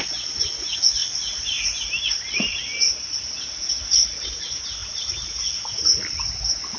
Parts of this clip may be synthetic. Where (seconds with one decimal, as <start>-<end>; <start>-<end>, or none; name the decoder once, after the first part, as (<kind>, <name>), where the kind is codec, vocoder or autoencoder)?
1.0-4.3 (vocoder, BigVGAN v2); 4.8-5.7